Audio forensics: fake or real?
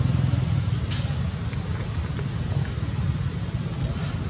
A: real